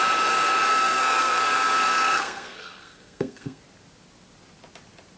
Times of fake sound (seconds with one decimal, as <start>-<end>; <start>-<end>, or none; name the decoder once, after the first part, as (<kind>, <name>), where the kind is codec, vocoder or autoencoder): 0.7-3.6 (codec, SNAC)